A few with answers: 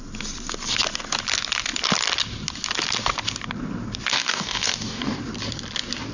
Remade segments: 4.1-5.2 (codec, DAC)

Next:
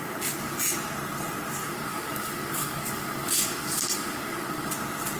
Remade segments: 1.6-4.7 (codec, DAC)

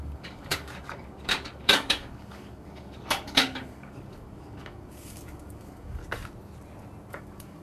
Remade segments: 0.0-6.0 (codec, DAC); 7.1-7.6

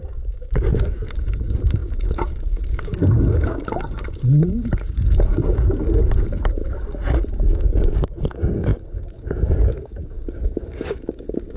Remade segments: 0.0-6.6 (codec, DAC); 7.3-11.6

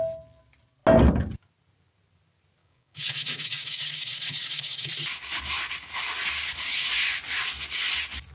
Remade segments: 2.6-4.9 (codec, DAC)